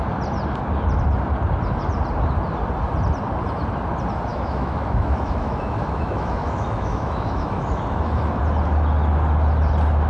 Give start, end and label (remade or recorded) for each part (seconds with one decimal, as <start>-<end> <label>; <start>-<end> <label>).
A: 0.0-4.3 recorded; 4.3-8.4 remade; 8.4-10.1 recorded